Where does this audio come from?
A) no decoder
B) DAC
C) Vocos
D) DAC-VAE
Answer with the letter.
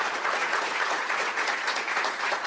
C